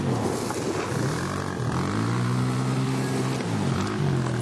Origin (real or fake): real